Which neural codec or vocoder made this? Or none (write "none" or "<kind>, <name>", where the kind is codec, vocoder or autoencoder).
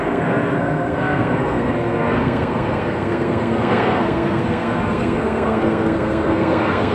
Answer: codec, SNAC